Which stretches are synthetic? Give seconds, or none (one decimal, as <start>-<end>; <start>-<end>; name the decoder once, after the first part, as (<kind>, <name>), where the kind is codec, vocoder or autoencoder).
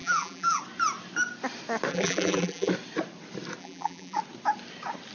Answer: 0.0-0.6 (vocoder, BigVGAN v2); 1.9-2.7; 3.6-4.2